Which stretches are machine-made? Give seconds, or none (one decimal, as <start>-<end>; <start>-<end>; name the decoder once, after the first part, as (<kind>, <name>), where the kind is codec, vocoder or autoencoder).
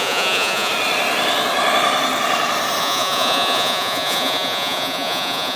0.0-0.7 (vocoder, Vocos); 2.8-5.6